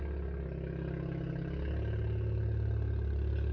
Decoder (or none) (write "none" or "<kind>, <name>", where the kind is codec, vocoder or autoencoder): none